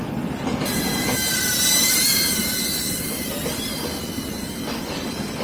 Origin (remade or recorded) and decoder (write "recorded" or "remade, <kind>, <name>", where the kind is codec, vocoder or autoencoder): recorded